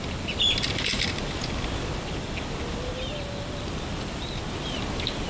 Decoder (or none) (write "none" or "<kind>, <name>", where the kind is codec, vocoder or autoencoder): none